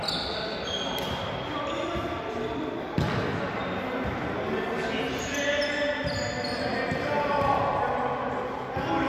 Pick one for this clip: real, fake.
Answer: real